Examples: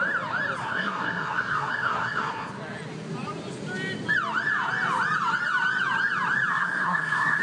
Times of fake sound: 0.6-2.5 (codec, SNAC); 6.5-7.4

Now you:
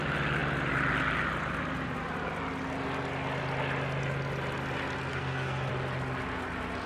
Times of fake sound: 5.1-5.7 (codec, SNAC)

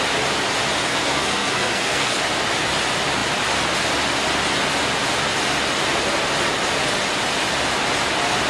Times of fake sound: 0.9-2.2 (codec, SNAC)

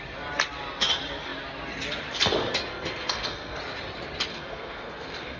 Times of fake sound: 2.7-3.6 (codec, SNAC); 4.3-5.4